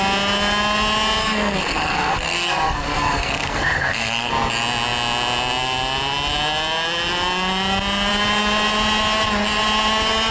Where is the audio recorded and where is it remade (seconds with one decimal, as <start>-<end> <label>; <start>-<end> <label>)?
0.0-1.2 recorded; 1.2-4.3 remade; 4.3-10.3 recorded